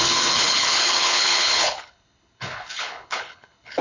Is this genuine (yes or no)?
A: no